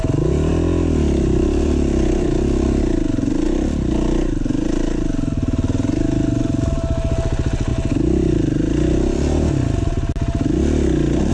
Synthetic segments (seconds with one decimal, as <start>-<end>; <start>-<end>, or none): none